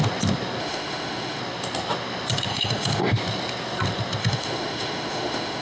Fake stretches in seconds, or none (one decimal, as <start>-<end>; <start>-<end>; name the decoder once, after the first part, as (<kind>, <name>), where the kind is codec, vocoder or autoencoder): 0.6-1.4 (autoencoder, DAC-VAE); 2.5-3.0; 4.2-5.6